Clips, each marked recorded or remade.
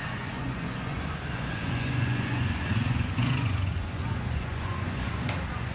remade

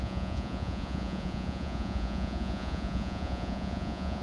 remade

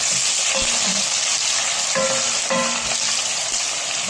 recorded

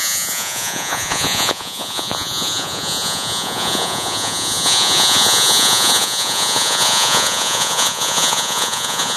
remade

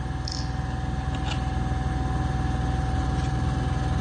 recorded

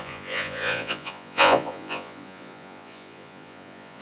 remade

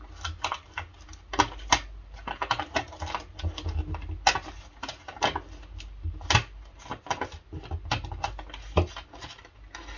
recorded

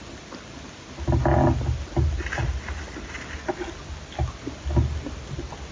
recorded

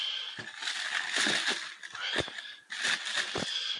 recorded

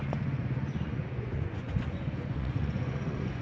remade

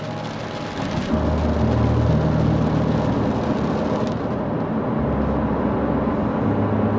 recorded